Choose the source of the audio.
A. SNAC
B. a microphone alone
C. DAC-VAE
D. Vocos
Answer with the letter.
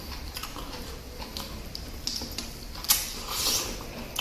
B